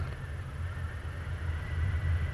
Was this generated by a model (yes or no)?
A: no